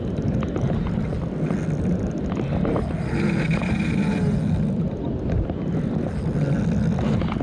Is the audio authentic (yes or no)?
yes